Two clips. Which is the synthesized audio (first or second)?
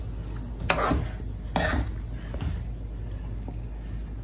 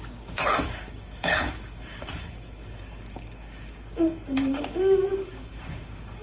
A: second